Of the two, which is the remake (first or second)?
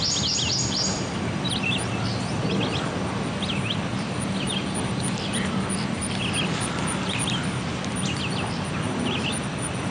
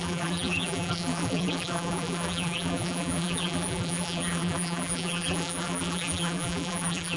second